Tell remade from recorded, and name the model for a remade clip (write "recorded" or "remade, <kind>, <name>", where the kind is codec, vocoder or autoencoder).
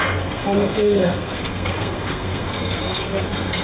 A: remade, codec, SNAC